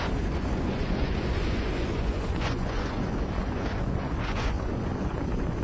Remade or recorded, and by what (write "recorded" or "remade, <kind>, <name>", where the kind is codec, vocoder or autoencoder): remade, vocoder, Vocos